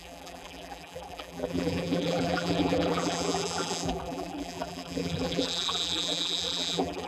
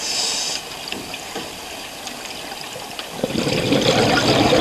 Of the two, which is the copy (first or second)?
first